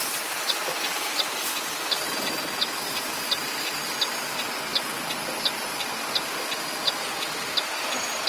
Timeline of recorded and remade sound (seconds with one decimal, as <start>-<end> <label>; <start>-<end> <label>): 0.0-8.3 recorded